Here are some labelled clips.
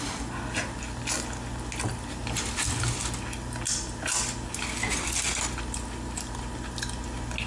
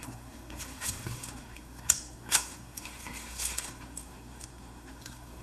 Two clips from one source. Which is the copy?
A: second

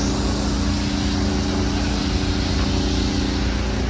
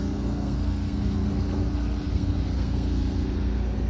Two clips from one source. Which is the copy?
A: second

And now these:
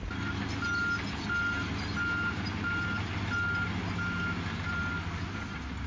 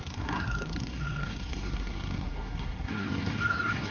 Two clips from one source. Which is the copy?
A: second